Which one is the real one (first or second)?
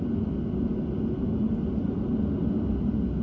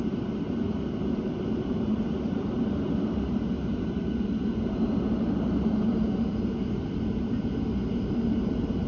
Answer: first